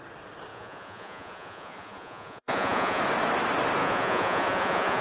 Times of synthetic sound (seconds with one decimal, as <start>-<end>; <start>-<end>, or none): 0.5-3.0; 3.8-5.0